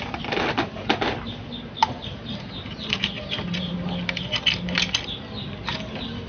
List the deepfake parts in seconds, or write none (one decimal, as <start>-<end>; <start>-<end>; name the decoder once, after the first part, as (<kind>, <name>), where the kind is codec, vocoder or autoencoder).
1.8-3.7 (vocoder, BigVGAN v2)

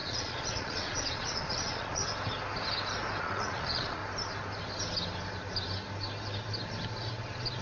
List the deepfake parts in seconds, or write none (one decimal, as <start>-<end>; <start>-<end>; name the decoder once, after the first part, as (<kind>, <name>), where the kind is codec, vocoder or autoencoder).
0.0-2.0 (vocoder, Vocos); 3.2-4.0